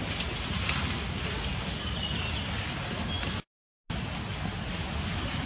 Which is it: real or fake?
real